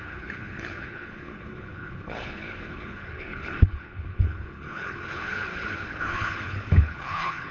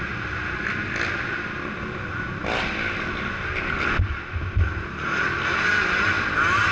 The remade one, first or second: first